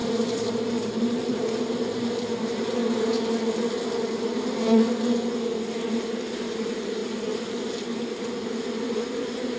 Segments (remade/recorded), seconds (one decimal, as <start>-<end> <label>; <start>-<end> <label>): 0.0-2.8 remade; 2.8-5.3 recorded; 5.3-9.6 remade